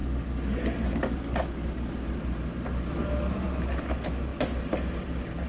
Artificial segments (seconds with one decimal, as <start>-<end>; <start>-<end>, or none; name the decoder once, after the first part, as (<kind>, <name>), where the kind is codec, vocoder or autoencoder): none